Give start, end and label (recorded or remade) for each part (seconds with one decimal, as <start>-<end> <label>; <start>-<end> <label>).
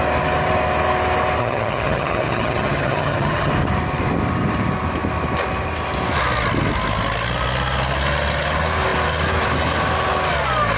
0.0-1.4 recorded; 1.4-3.5 remade; 3.5-10.8 recorded